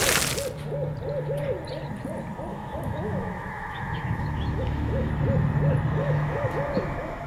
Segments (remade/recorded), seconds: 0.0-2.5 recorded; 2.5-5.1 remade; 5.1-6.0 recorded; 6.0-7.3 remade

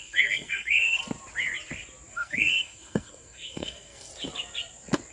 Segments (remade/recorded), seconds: 0.0-1.0 remade; 1.0-2.1 recorded; 2.1-4.1 remade; 4.1-5.1 recorded

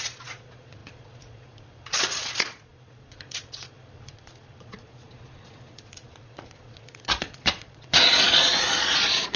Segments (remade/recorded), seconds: 0.0-9.4 remade

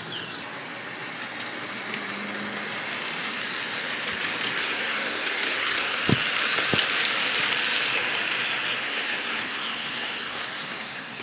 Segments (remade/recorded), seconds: 0.0-4.6 recorded; 4.6-6.0 remade; 6.0-8.8 recorded; 8.8-11.2 remade

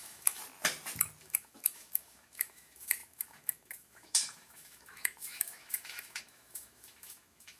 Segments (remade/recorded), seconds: 0.0-0.4 remade; 0.4-1.2 recorded; 1.2-7.6 remade

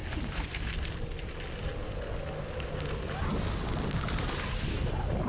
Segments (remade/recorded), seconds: 0.0-5.3 recorded